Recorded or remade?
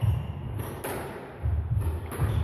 remade